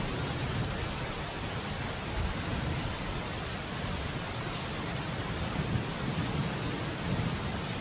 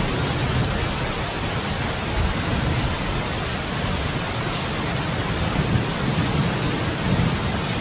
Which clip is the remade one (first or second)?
first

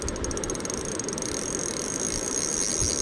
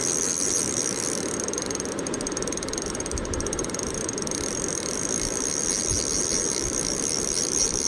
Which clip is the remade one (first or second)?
second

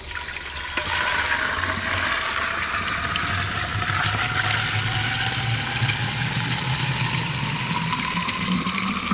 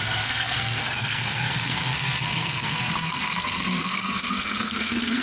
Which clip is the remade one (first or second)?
second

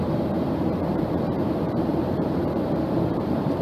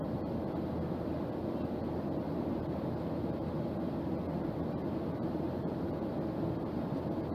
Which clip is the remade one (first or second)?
first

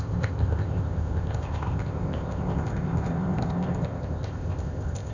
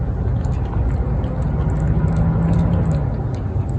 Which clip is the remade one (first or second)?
first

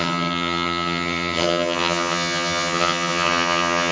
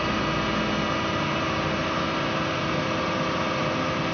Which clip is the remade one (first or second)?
first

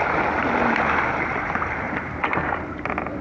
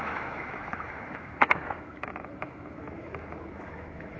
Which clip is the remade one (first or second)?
second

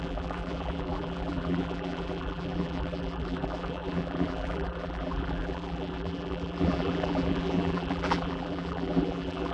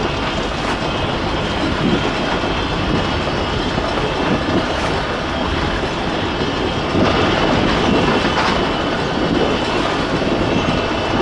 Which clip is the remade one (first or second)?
first